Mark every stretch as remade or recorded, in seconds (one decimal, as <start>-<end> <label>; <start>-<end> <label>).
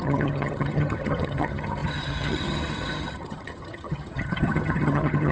0.0-5.3 remade